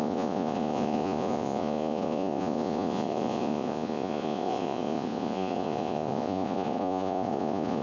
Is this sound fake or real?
fake